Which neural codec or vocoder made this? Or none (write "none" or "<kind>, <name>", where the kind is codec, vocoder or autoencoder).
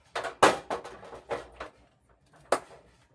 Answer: none